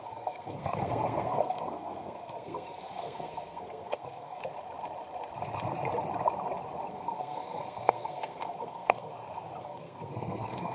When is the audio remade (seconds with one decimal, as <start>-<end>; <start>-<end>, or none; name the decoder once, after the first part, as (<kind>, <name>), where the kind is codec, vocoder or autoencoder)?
0.0-4.4 (codec, SNAC); 6.9-9.1; 9.6-10.7